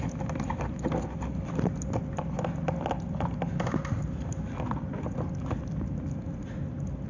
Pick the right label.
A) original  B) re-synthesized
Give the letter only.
A